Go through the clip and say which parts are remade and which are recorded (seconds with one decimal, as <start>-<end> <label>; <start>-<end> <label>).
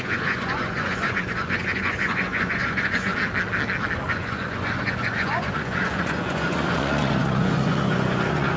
0.0-3.1 remade; 3.1-4.1 recorded; 4.1-8.6 remade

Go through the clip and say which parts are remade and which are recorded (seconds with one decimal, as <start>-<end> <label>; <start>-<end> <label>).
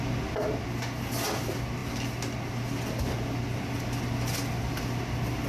0.0-5.5 recorded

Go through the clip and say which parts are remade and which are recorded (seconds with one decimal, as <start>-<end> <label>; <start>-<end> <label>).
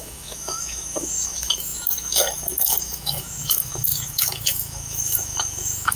0.0-6.0 remade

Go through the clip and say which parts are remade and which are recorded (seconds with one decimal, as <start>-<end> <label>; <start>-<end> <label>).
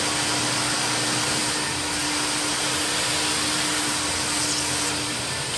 0.0-5.6 recorded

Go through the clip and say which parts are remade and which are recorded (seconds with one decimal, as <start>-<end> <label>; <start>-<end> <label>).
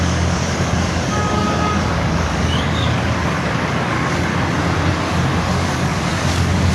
0.0-4.3 remade; 4.3-5.4 recorded; 5.4-6.7 remade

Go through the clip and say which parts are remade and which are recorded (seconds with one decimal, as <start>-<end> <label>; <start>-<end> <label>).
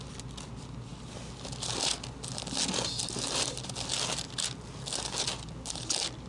0.0-6.3 recorded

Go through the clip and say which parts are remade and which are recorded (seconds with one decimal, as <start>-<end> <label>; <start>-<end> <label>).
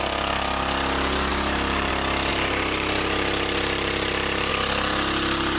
0.0-1.3 recorded; 1.3-1.9 remade; 1.9-2.3 recorded; 2.3-4.5 remade; 4.5-5.6 recorded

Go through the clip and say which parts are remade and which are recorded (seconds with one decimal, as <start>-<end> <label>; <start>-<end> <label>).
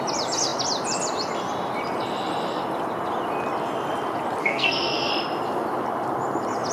0.0-4.4 recorded; 4.4-5.1 remade; 5.1-6.7 recorded